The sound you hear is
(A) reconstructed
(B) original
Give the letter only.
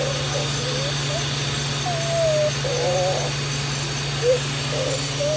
B